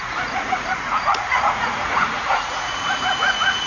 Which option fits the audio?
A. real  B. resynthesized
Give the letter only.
B